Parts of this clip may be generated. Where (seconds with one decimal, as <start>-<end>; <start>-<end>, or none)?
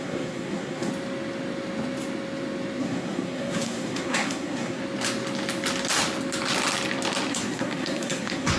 0.0-0.9; 2.8-4.8; 7.3-8.6